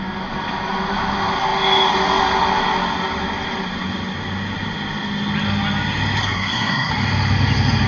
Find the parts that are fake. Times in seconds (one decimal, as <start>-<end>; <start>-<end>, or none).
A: 6.2-6.9